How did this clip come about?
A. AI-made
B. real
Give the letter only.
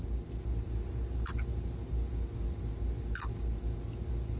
B